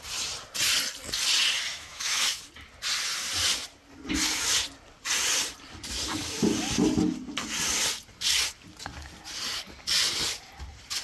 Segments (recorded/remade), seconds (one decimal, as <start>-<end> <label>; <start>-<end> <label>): 0.0-1.7 recorded; 1.7-2.4 remade; 2.4-11.0 recorded